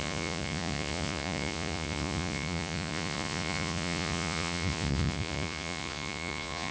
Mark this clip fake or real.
fake